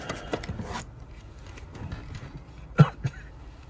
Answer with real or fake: real